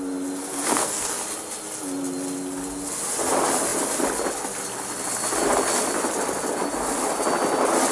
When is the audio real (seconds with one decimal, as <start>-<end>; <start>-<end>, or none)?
0.0-0.4; 1.1-7.9